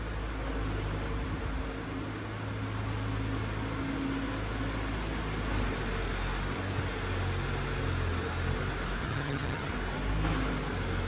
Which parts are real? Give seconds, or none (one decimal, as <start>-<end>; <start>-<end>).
0.0-9.0; 9.7-11.1